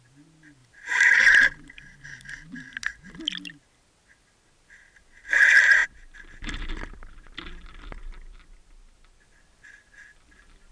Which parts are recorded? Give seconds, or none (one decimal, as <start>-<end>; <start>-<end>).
0.0-10.7